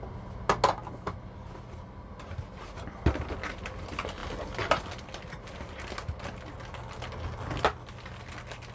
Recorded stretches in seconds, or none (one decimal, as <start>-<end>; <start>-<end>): 0.0-8.7

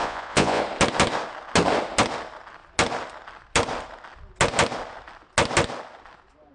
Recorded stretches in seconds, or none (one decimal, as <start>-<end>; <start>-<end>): 0.6-6.5